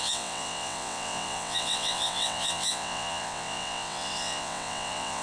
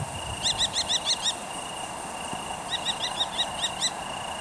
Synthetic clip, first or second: first